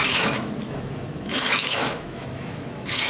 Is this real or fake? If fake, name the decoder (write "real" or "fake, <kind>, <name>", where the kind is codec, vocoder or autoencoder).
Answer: fake, autoencoder, DAC-VAE